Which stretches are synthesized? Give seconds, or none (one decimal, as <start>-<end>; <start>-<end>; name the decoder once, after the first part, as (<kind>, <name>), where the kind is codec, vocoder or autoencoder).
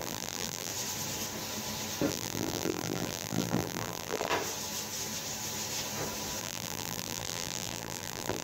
0.0-0.7 (vocoder, BigVGAN v2); 2.1-4.3; 6.4-8.4